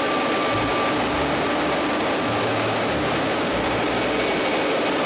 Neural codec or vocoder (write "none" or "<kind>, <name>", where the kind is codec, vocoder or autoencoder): none